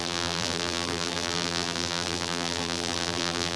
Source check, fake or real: fake